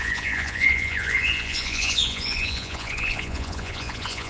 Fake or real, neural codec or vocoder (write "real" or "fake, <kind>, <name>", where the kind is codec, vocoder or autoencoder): fake, vocoder, Vocos